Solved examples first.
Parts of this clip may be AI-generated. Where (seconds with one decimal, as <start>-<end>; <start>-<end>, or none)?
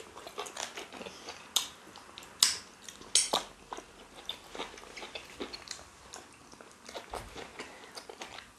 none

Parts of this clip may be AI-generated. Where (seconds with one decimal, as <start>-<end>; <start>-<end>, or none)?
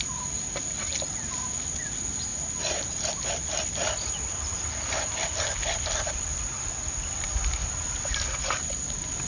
0.9-1.8; 2.3-6.7; 7.6-9.3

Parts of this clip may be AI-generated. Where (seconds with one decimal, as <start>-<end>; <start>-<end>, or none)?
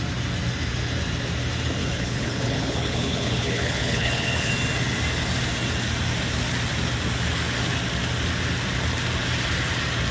1.8-4.5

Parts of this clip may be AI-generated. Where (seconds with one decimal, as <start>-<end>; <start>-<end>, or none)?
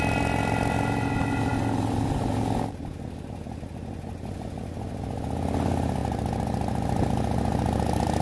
none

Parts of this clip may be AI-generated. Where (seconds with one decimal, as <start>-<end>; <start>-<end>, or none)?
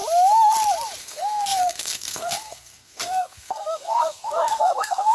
1.0-5.1